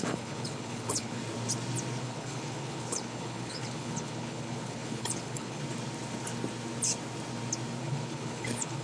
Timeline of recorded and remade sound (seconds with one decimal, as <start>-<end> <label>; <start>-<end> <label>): 0.0-1.2 remade; 1.2-2.0 recorded; 2.0-5.6 remade; 5.6-7.8 recorded; 7.8-8.8 remade